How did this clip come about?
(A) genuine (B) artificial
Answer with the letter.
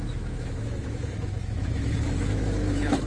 B